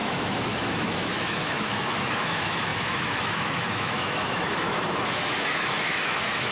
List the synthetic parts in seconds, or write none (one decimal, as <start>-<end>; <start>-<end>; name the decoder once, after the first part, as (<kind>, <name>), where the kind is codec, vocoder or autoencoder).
0.0-6.5 (autoencoder, DAC-VAE)